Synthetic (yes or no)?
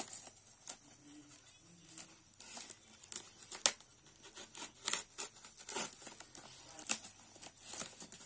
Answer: no